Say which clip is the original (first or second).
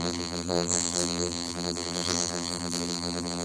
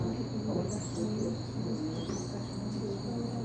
second